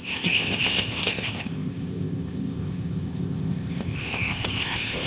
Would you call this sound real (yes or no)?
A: no